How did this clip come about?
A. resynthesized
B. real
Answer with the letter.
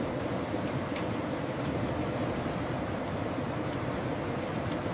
A